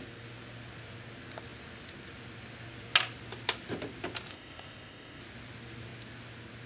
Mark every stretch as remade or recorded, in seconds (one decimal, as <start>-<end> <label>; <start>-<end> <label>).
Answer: 0.0-4.3 recorded; 4.3-5.2 remade; 5.2-6.7 recorded